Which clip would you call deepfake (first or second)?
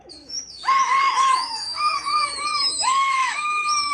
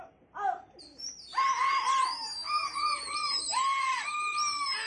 first